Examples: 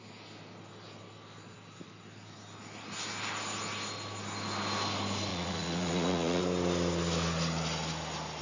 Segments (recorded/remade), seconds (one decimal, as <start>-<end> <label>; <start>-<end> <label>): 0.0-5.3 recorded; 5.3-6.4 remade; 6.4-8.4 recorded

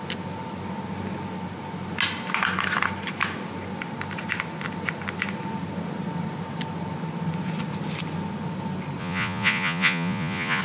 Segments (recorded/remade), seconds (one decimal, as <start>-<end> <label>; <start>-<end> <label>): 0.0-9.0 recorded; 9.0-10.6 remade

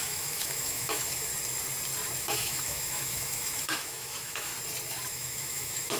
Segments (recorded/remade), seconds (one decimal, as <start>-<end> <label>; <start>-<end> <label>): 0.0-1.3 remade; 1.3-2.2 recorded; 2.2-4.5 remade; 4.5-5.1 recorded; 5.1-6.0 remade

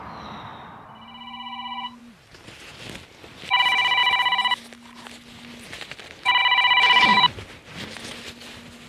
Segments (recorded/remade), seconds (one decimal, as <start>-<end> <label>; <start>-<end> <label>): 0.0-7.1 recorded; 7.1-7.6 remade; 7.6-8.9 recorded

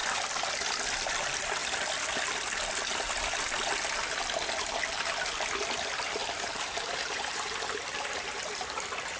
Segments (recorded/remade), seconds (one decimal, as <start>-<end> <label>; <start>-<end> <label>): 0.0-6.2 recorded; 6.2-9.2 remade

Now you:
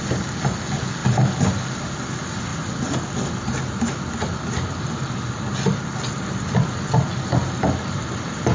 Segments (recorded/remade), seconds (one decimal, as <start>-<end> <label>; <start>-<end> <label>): 0.0-8.5 remade